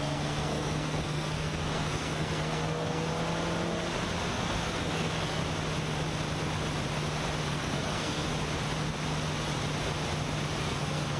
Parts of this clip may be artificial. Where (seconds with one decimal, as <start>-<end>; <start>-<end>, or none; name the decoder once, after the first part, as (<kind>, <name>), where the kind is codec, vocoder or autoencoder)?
0.0-3.1 (codec, SNAC); 4.3-5.4; 7.5-8.3; 10.6-11.2